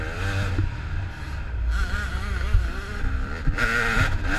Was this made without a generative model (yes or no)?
yes